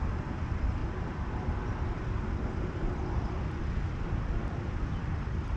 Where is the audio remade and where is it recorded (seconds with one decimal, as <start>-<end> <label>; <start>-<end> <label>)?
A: 0.0-5.6 recorded